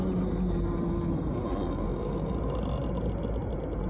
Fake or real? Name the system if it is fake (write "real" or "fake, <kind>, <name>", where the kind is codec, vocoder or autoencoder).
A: real